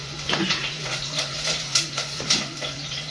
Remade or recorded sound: remade